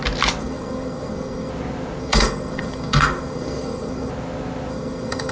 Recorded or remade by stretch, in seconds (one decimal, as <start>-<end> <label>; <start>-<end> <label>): 0.0-0.4 recorded; 0.4-1.5 remade; 1.5-2.0 recorded; 2.0-4.1 remade; 4.1-4.7 recorded; 4.7-5.3 remade

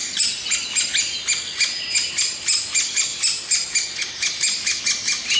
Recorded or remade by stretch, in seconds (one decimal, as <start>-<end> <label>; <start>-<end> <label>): 0.0-5.4 recorded

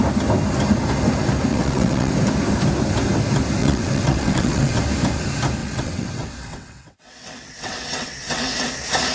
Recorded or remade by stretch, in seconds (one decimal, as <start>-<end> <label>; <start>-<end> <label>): 0.0-1.5 recorded; 1.5-2.1 remade; 2.1-3.6 recorded; 3.6-4.8 remade; 4.8-5.6 recorded; 5.6-8.7 remade; 8.7-9.1 recorded

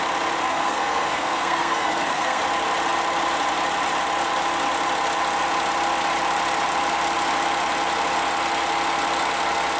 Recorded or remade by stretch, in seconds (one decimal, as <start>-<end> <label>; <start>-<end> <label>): 0.0-0.4 recorded; 0.4-2.4 remade; 2.4-9.8 recorded